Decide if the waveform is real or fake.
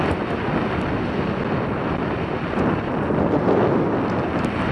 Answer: real